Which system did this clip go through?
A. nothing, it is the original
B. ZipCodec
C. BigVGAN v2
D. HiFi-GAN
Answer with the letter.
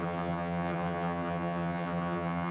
D